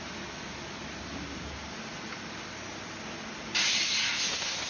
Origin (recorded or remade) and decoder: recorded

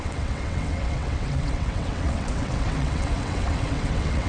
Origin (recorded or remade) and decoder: remade, vocoder, WaveNeXt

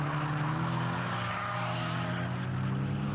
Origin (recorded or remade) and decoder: recorded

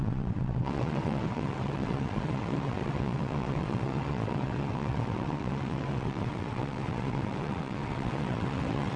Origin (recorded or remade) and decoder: remade, vocoder, WaveNeXt